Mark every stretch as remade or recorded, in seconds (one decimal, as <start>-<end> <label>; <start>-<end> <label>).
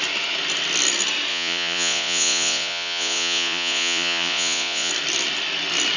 0.0-1.3 recorded; 1.3-4.9 remade; 4.9-6.0 recorded